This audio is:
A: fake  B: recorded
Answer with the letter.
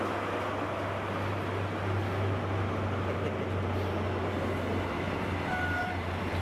B